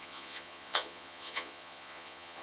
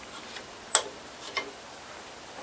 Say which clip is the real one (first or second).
second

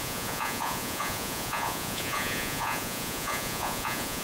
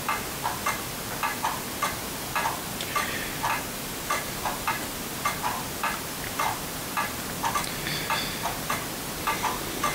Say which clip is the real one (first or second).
second